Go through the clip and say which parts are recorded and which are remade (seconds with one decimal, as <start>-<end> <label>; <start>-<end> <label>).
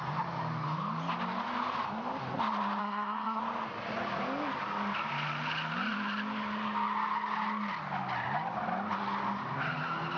0.0-2.8 recorded; 2.8-3.4 remade; 3.4-10.2 recorded